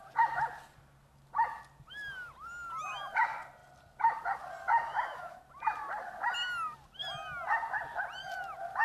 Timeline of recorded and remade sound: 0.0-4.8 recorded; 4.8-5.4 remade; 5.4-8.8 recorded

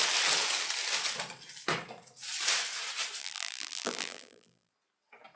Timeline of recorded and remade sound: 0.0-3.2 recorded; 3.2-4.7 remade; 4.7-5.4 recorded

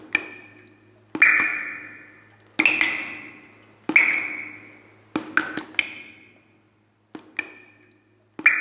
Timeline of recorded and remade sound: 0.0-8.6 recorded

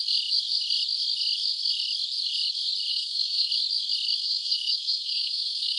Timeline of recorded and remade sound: 0.0-2.9 recorded; 2.9-3.5 remade; 3.5-4.2 recorded; 4.2-5.8 remade